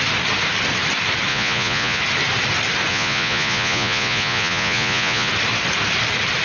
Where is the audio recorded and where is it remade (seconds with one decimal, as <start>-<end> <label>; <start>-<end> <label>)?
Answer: 0.0-1.3 recorded; 1.3-2.0 remade; 2.0-2.9 recorded; 2.9-5.3 remade; 5.3-6.4 recorded